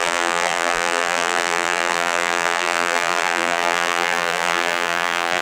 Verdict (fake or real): fake